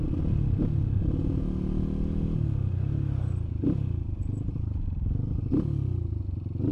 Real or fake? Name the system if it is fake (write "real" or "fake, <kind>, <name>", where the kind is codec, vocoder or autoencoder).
real